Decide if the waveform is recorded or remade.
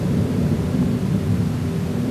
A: remade